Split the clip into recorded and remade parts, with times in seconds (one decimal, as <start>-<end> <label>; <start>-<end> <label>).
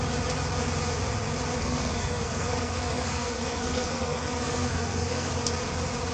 0.0-1.6 recorded; 1.6-5.3 remade; 5.3-6.1 recorded